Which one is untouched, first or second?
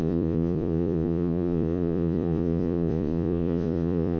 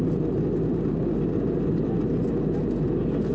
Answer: second